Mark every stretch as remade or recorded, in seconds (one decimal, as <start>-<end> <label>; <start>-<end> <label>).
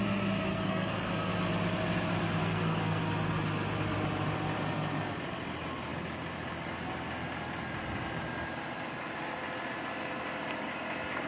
0.0-0.5 recorded; 0.5-1.1 remade; 1.1-2.4 recorded; 2.4-3.0 remade; 3.0-11.3 recorded